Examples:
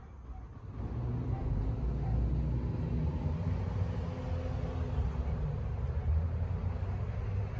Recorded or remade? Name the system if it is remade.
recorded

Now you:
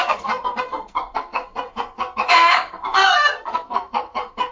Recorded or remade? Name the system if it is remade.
remade, codec, SNAC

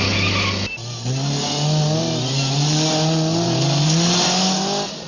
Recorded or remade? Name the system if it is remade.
recorded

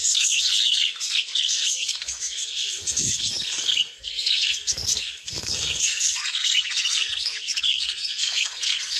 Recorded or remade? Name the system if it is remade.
remade, codec, SNAC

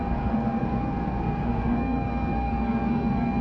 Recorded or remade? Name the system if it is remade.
remade, codec, SNAC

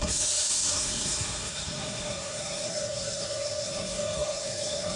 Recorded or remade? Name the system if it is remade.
remade, codec, SNAC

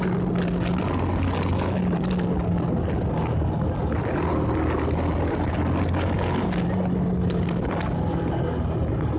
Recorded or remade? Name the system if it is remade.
recorded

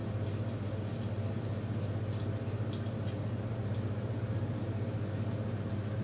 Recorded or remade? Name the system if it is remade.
recorded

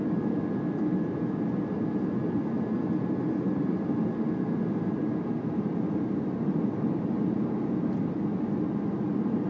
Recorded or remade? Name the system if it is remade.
recorded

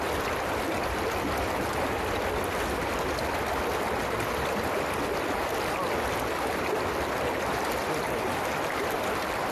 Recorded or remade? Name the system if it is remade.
recorded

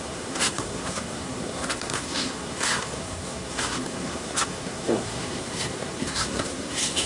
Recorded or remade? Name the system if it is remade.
remade, codec, SNAC